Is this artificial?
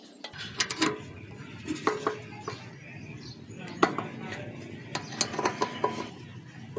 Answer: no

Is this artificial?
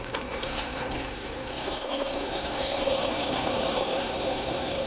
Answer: yes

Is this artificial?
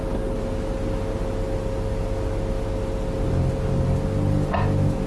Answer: no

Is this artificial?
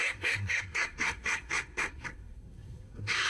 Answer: yes